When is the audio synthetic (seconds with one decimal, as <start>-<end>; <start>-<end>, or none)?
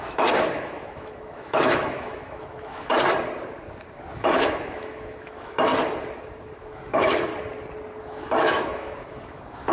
0.0-2.9; 4.1-5.7; 6.6-7.3; 8.0-9.7